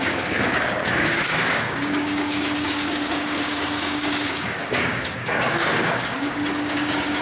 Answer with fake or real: fake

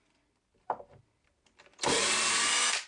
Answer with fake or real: real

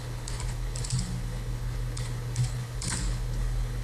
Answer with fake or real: fake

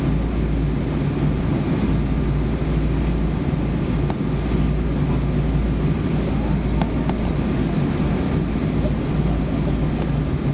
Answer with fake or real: real